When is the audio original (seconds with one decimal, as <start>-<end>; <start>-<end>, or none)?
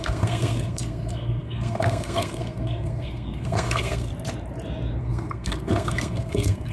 4.1-5.0